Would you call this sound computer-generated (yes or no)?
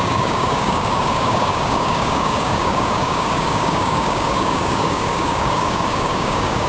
yes